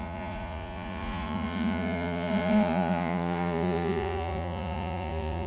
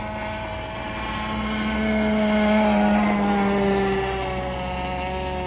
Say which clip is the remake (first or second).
first